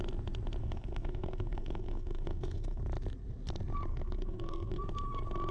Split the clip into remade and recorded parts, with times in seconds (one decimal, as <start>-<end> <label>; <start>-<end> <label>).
0.0-0.6 recorded; 0.6-2.8 remade; 2.8-3.9 recorded; 3.9-4.8 remade; 4.8-5.5 recorded